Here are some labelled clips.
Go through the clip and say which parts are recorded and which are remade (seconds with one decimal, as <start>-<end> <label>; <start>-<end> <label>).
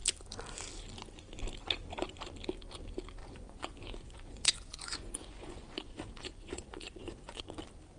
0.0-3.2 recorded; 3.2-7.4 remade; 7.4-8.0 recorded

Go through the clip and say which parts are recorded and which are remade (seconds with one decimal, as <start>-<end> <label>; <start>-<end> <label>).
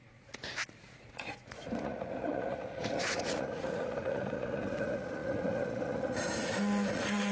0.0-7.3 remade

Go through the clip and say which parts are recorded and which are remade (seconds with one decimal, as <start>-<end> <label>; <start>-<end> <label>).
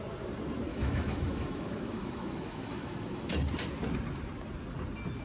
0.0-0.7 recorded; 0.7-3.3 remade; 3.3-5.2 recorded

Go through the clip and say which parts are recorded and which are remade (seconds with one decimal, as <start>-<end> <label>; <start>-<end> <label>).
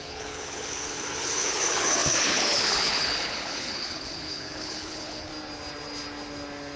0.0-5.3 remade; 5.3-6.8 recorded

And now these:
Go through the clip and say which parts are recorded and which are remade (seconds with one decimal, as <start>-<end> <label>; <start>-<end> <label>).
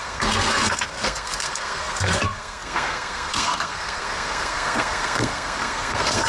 0.0-6.3 remade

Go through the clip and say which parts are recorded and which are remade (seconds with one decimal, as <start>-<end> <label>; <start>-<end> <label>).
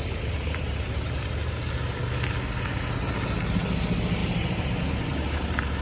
0.0-1.7 remade; 1.7-4.2 recorded; 4.2-5.8 remade